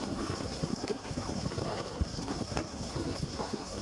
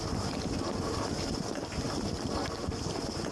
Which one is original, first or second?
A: second